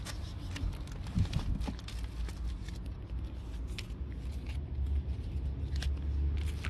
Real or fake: real